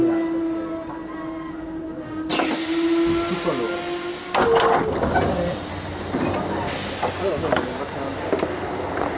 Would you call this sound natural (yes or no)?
yes